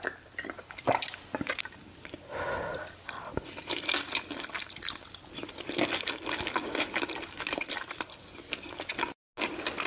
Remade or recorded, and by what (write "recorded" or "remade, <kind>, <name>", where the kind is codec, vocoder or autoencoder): recorded